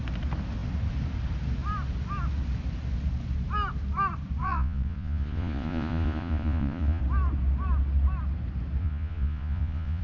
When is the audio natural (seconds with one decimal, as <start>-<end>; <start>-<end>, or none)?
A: 0.0-4.4; 7.0-8.8